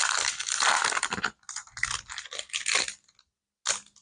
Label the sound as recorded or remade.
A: recorded